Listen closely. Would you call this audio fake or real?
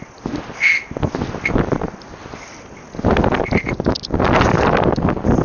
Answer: real